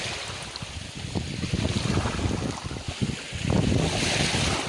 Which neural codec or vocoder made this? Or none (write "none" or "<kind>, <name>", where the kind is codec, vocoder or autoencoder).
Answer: none